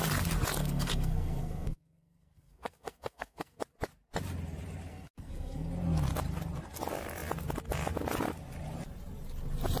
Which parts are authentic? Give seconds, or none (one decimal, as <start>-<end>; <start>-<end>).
0.0-0.6; 3.6-4.9; 5.7-9.8